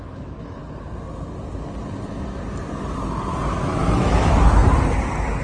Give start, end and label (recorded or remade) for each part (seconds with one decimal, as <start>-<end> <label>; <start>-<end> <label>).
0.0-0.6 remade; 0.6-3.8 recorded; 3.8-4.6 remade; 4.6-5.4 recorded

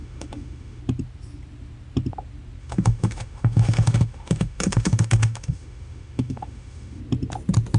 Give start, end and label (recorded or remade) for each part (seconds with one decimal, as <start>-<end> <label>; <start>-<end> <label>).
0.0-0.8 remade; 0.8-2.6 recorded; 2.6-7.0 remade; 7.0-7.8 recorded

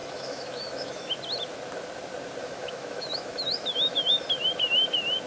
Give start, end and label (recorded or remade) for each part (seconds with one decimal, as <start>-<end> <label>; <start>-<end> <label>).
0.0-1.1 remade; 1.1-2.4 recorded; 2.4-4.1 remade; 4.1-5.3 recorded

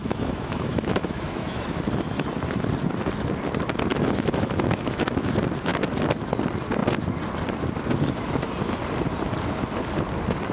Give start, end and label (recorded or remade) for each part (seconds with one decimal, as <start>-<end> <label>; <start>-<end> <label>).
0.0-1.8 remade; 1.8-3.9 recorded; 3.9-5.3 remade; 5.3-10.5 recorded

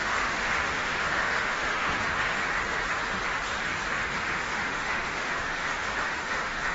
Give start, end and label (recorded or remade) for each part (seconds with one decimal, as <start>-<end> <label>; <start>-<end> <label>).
0.0-2.4 remade; 2.4-3.9 recorded; 3.9-6.7 remade